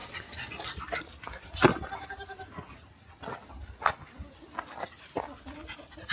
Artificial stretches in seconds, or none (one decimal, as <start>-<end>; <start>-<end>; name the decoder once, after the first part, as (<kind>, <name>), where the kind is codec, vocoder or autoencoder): 0.0-3.5 (vocoder, BigVGAN v2)